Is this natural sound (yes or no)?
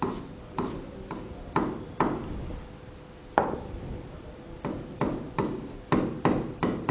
yes